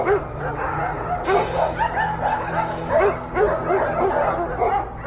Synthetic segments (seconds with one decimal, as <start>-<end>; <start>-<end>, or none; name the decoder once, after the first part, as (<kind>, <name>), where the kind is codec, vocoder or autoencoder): 2.3-2.9 (autoencoder, DAC-VAE)